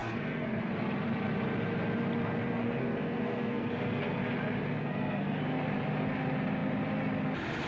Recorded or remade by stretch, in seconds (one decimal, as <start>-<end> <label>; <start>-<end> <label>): 0.0-0.7 remade; 0.7-2.8 recorded; 2.8-3.7 remade; 3.7-4.8 recorded; 4.8-5.4 remade; 5.4-7.7 recorded